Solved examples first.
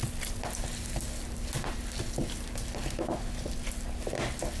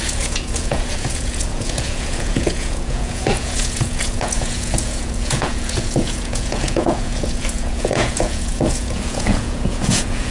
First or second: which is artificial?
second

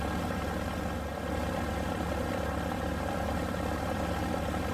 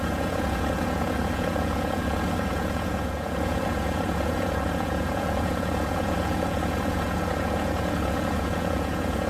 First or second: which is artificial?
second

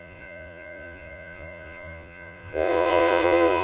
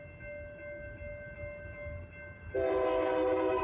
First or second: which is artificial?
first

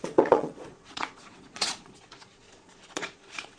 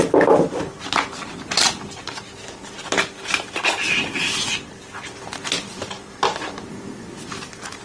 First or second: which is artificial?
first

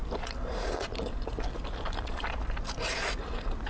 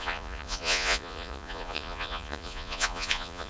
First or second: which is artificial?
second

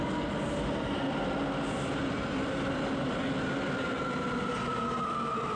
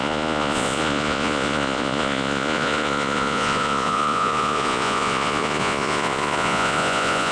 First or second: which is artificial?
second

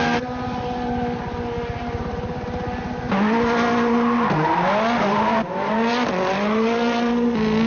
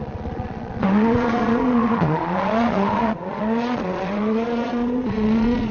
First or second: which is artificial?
second